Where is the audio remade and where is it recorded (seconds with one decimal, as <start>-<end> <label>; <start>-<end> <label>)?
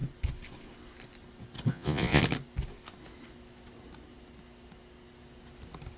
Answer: 0.0-1.7 recorded; 1.7-2.2 remade; 2.2-6.0 recorded